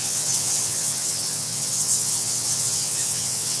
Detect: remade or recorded remade